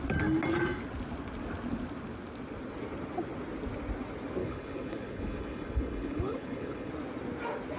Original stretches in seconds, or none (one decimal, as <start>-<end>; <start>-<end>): 0.0-4.4; 6.9-7.8